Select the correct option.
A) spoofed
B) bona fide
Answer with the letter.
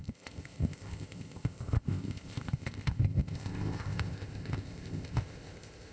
A